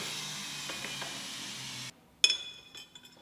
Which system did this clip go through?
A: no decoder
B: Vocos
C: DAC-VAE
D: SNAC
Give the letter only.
A